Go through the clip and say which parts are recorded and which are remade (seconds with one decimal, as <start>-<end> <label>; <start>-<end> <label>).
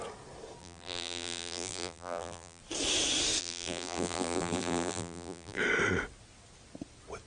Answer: 0.0-0.6 recorded; 0.6-2.6 remade; 2.6-3.4 recorded; 3.4-5.6 remade; 5.6-7.3 recorded